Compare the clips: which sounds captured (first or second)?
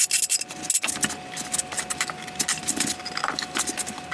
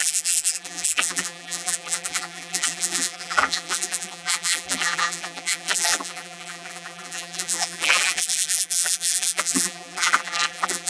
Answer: first